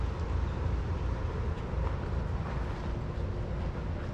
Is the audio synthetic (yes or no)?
no